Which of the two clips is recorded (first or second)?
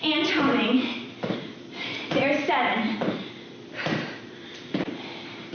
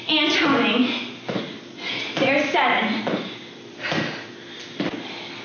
second